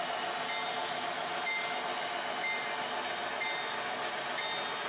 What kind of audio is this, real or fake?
real